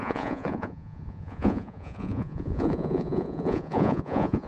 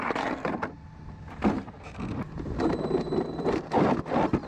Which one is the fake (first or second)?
first